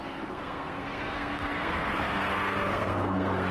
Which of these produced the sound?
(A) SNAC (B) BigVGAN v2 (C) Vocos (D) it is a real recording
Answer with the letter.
A